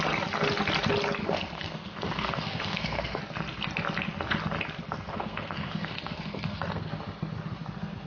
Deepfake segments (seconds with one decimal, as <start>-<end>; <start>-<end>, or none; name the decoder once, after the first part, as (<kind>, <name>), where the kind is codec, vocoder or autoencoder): 1.2-3.2 (codec, SNAC); 4.8-6.9